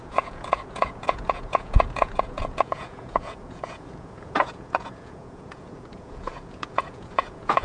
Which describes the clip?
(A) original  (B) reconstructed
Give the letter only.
B